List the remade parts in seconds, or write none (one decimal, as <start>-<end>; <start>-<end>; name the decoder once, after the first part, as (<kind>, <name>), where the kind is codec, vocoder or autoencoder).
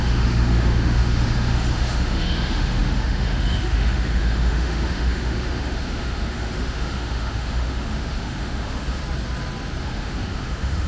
0.0-9.0 (autoencoder, DAC-VAE); 9.8-10.9